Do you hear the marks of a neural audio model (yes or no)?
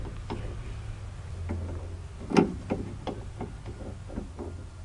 no